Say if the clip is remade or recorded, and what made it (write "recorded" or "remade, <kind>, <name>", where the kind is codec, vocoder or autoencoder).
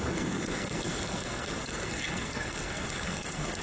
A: remade, codec, SNAC